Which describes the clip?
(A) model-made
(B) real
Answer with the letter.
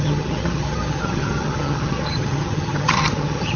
A